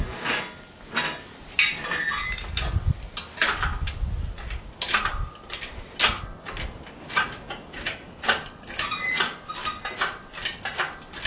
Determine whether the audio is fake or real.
real